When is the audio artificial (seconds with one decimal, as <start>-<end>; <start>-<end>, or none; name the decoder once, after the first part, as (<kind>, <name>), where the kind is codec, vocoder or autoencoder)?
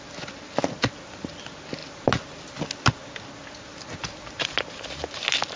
none